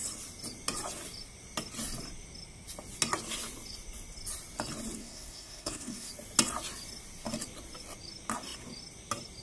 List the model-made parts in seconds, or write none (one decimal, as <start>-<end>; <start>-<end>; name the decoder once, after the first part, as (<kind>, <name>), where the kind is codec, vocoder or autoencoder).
5.0-6.1 (codec, SNAC)